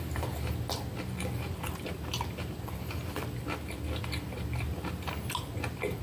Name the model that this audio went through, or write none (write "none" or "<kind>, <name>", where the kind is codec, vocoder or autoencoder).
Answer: none